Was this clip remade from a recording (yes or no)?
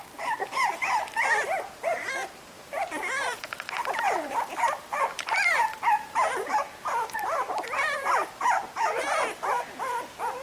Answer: yes